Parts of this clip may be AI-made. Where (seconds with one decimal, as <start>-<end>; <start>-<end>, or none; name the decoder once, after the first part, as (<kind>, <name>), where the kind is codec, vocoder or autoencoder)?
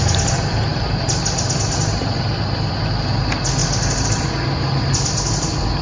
none